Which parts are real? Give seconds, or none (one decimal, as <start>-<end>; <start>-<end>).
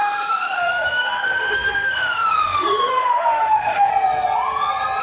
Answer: 3.9-5.0